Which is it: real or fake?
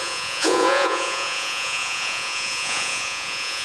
fake